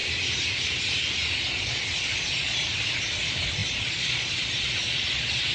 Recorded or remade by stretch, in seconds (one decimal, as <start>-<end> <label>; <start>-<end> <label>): 0.0-1.6 recorded; 1.6-5.5 remade